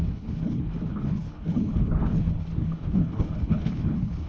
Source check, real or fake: fake